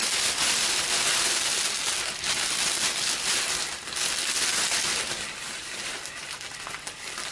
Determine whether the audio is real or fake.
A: real